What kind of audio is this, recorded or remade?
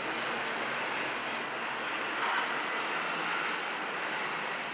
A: recorded